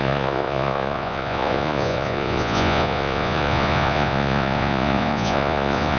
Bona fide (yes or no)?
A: no